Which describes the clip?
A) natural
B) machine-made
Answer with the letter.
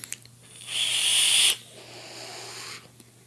A